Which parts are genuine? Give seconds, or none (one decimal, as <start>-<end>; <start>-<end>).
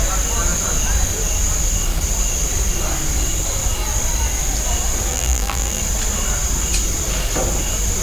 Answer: 0.0-5.1; 5.8-8.0